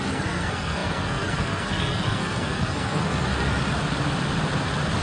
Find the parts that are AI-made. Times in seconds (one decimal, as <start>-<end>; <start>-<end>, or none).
0.0-3.3